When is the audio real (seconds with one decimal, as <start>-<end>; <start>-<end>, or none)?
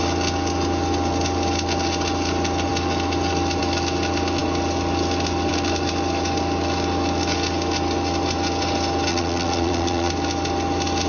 0.0-9.1; 10.1-11.1